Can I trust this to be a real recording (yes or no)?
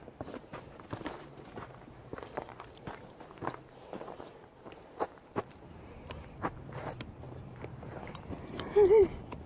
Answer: no